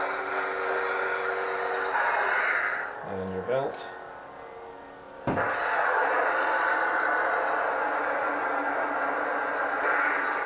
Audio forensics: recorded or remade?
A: recorded